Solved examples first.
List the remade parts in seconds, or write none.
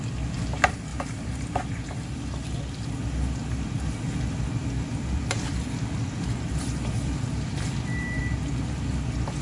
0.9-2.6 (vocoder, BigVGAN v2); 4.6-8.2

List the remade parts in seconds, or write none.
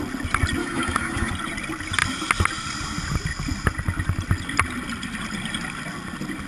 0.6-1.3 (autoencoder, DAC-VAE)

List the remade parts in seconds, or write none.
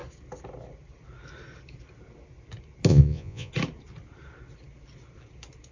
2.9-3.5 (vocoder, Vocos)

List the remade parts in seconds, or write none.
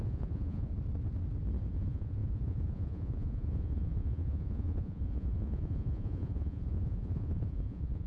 0.0-0.7 (vocoder, Vocos); 1.7-8.1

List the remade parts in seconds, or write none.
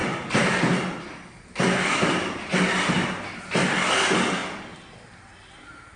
none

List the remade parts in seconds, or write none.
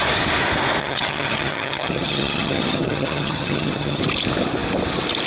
0.8-4.0 (vocoder, HiFi-GAN)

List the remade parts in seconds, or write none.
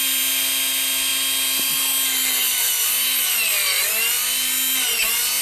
none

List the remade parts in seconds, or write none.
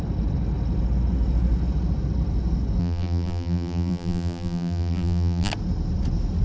2.8-5.5 (vocoder, BigVGAN v2)